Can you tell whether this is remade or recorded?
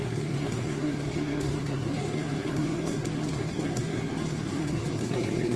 remade